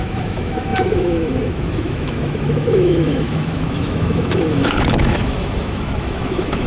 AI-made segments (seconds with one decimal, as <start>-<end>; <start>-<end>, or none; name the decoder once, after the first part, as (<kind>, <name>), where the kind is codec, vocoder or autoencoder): 0.0-6.7 (autoencoder, DAC-VAE)